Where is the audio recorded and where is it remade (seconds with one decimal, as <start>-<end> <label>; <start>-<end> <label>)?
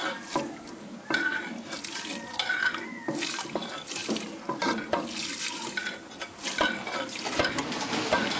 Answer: 0.0-8.4 recorded